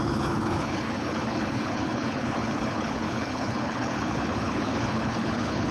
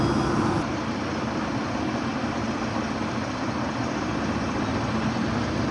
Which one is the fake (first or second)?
first